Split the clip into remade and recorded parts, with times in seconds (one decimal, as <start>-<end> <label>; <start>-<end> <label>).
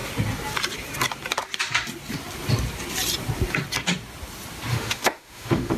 0.0-4.7 recorded; 4.7-5.8 remade